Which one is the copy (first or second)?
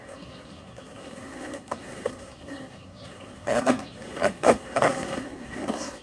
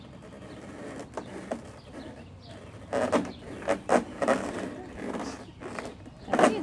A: first